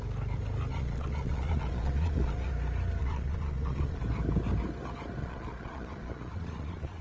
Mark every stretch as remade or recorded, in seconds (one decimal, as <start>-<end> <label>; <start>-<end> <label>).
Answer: 0.0-0.7 recorded; 0.7-2.5 remade; 2.5-3.0 recorded; 3.0-4.0 remade; 4.0-5.2 recorded; 5.2-7.0 remade